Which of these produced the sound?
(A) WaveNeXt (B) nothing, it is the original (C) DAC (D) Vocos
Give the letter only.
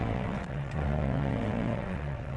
A